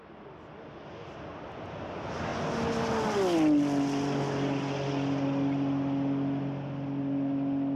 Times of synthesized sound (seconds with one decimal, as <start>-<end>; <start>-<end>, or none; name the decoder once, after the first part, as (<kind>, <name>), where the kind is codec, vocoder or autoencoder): none

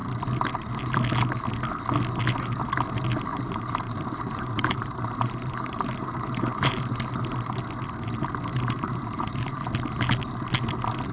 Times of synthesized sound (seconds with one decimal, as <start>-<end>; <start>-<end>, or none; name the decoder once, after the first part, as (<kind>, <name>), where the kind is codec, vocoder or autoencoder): 3.3-7.1 (vocoder, BigVGAN v2); 8.5-9.7

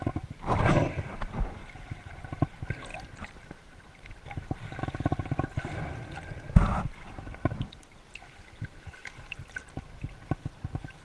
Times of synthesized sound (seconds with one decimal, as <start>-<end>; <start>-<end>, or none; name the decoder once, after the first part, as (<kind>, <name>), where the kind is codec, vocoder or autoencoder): 1.6-2.2 (vocoder, BigVGAN v2); 2.9-3.9

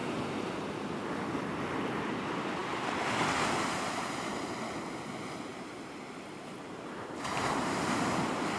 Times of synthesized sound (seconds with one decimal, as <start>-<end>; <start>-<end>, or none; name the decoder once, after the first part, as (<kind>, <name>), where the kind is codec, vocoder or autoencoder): 5.5-8.2 (vocoder, BigVGAN v2)

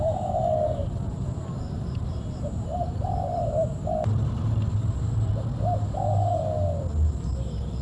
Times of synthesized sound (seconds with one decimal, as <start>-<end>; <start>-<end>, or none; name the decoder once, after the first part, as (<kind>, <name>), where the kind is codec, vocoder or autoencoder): 0.8-5.3 (vocoder, BigVGAN v2)

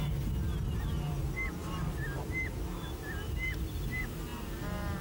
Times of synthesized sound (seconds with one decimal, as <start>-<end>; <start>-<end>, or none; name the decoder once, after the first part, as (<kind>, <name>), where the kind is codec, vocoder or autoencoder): 0.5-1.1 (vocoder, BigVGAN v2)